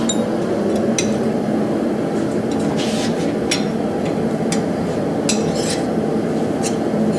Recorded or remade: recorded